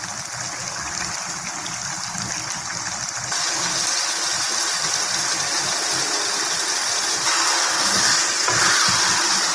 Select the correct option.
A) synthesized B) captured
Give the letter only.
B